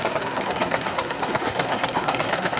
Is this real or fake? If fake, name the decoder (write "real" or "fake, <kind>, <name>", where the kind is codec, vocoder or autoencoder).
fake, codec, SNAC